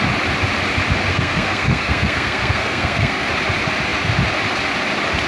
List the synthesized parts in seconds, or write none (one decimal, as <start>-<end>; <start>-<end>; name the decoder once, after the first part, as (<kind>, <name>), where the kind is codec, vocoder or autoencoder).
1.1-3.3 (codec, SNAC)